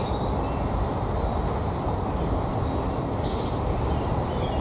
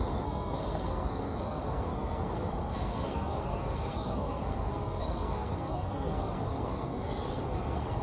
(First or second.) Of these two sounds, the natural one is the first